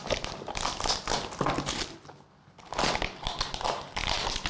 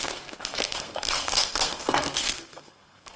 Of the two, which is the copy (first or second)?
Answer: second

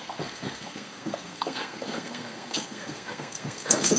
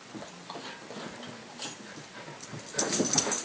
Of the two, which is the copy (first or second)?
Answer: first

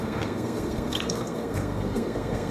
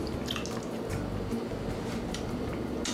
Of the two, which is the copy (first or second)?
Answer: first